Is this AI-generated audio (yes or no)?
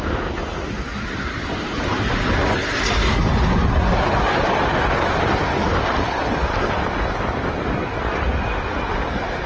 no